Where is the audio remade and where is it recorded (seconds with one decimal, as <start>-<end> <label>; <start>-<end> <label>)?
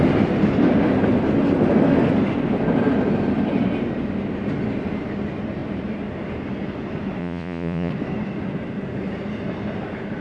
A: 0.0-7.2 recorded; 7.2-7.9 remade; 7.9-10.2 recorded